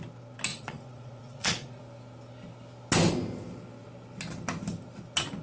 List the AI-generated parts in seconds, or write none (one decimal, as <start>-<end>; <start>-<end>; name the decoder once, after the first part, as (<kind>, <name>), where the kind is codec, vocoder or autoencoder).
0.5-1.8 (vocoder, Vocos)